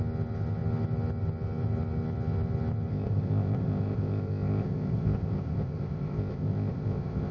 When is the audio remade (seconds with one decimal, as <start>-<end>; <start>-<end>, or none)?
2.9-7.3